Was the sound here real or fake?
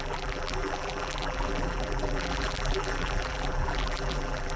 fake